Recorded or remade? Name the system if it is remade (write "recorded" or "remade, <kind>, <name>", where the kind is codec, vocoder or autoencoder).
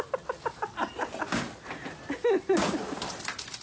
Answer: recorded